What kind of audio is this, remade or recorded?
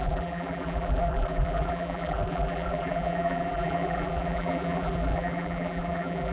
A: remade